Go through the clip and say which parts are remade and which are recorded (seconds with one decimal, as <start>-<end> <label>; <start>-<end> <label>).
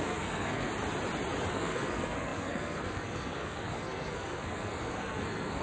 0.0-0.7 remade; 0.7-1.5 recorded; 1.5-5.6 remade